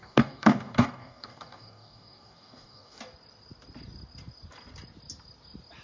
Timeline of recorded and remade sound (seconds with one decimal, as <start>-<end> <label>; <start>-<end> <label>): 0.0-3.0 remade; 3.0-5.8 recorded